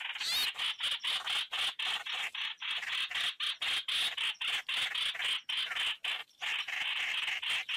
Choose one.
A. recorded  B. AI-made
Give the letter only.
A